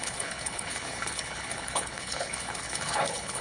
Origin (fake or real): fake